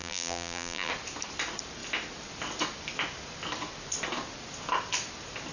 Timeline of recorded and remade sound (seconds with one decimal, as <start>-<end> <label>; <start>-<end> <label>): 0.0-0.9 remade; 0.9-5.5 recorded